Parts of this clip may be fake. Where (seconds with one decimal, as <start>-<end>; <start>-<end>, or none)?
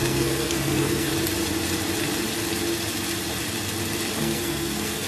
0.0-1.1; 4.2-5.1